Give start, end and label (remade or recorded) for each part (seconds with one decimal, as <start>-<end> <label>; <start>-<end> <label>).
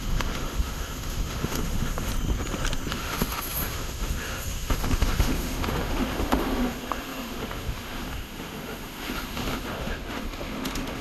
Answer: 0.0-2.1 remade; 2.1-2.9 recorded; 2.9-11.0 remade